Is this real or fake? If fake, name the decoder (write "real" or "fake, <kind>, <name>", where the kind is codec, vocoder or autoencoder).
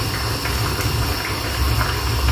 real